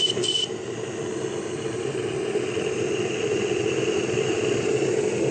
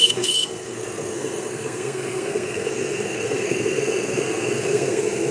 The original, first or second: first